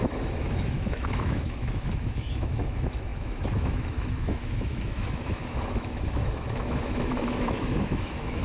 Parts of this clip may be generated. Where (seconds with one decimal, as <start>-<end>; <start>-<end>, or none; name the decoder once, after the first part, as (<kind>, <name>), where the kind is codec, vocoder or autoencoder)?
0.0-8.4 (autoencoder, DAC-VAE)